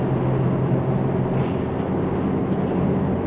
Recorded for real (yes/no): yes